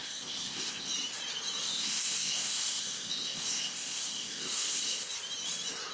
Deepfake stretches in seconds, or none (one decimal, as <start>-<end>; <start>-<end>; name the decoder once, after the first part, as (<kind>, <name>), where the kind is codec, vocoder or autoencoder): 0.0-0.9 (codec, ZipCodec); 1.6-5.1